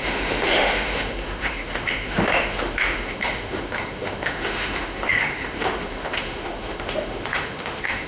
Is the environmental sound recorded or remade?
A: remade